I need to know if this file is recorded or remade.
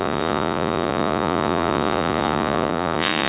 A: remade